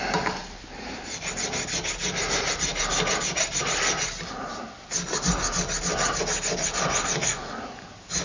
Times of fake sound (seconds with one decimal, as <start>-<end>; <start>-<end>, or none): 0.4-1.1